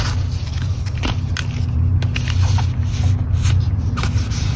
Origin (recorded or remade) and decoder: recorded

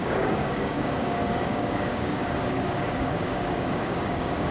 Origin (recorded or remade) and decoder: remade, codec, DAC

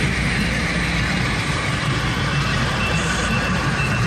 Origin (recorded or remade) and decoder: remade, vocoder, BigVGAN v2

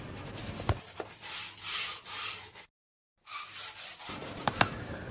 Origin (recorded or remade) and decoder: recorded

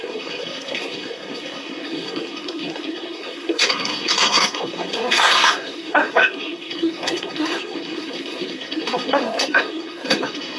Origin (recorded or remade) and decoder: remade, codec, SNAC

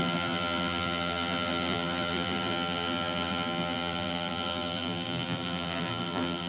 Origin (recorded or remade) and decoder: remade, vocoder, BigVGAN v2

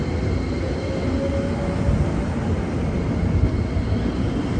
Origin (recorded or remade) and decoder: recorded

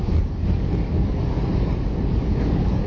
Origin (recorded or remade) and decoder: remade, codec, DAC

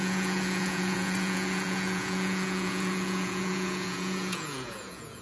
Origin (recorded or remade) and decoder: remade, vocoder, Vocos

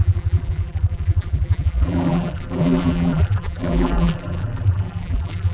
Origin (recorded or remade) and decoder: remade, vocoder, BigVGAN v2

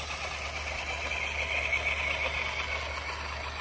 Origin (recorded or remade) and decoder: recorded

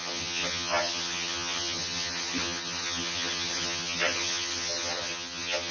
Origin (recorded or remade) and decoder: remade, vocoder, HiFi-GAN